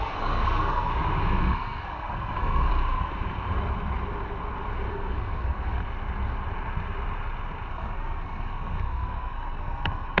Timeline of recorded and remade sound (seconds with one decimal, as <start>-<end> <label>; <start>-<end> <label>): 0.0-0.9 remade; 0.9-1.4 recorded; 1.4-2.7 remade; 2.7-4.9 recorded; 4.9-5.8 remade; 5.8-7.7 recorded; 7.7-10.2 remade